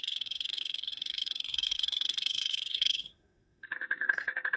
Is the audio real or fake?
fake